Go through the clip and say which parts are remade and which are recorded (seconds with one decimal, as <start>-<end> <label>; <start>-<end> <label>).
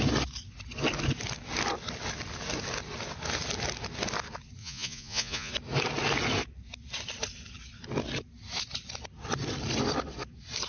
0.0-4.6 recorded; 4.6-5.5 remade; 5.5-10.7 recorded